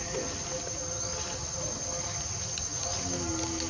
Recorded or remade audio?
recorded